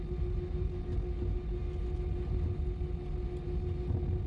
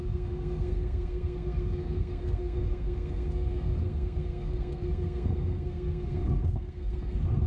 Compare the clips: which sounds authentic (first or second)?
first